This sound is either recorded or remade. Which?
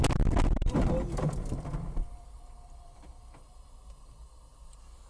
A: recorded